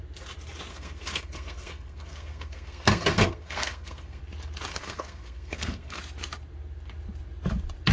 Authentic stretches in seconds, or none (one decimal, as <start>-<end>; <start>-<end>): 0.0-0.7; 4.2-4.7; 6.0-7.9